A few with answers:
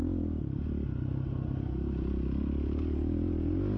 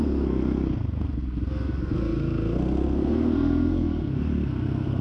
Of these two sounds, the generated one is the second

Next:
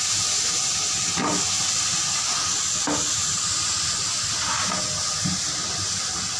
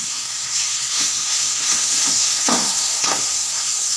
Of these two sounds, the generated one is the second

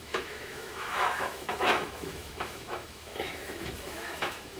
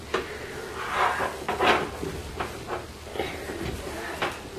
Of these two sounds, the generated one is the first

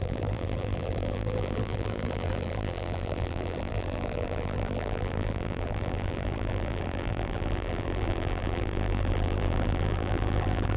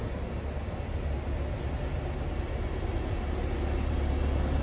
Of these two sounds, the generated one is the first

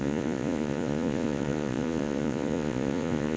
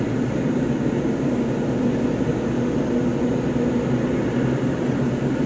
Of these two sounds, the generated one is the first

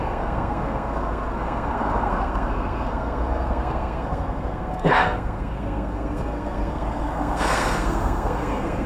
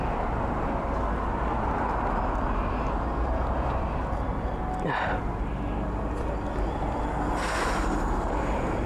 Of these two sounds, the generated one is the first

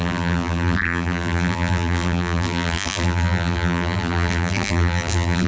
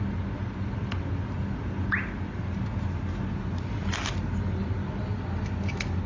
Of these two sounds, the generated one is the first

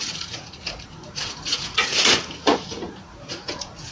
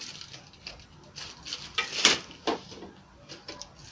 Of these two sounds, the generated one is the first